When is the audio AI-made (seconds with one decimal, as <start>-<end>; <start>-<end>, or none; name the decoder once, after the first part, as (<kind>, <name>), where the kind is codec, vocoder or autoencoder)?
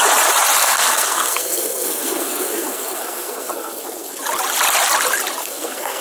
0.6-4.2 (codec, SNAC); 5.4-6.0